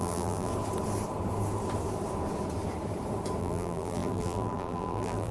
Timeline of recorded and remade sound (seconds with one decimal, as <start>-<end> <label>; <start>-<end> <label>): 0.0-0.5 remade; 0.5-3.4 recorded; 3.4-5.3 remade